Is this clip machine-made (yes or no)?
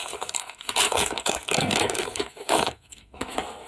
yes